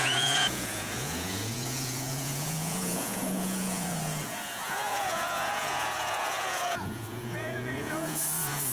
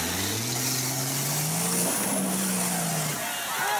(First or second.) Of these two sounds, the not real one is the first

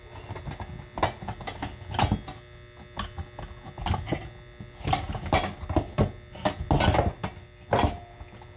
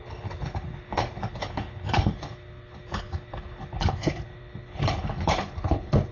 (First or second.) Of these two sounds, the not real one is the second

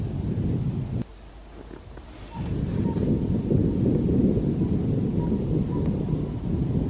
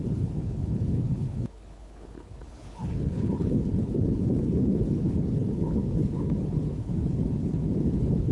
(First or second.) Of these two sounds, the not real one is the second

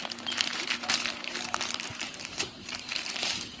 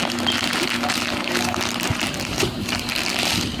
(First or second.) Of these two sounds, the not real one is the first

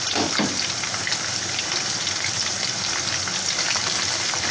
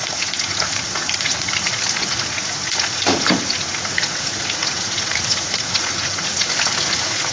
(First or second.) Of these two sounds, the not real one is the second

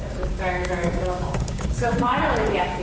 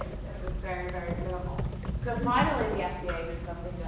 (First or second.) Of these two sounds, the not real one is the first